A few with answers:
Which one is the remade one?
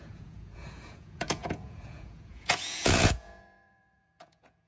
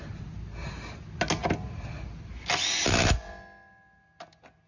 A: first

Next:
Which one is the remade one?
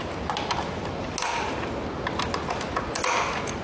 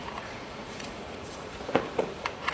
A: second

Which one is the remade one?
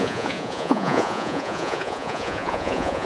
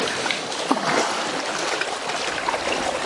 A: first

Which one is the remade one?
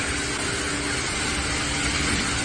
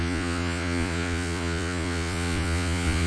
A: second